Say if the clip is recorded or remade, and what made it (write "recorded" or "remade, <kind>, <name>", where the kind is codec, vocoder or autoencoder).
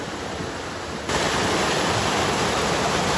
recorded